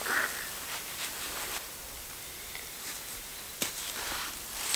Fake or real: fake